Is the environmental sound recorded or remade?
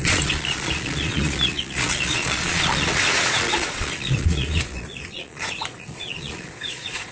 remade